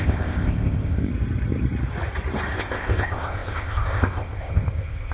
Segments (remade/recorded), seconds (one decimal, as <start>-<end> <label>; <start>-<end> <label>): 0.0-1.1 remade; 1.1-2.5 recorded; 2.5-5.1 remade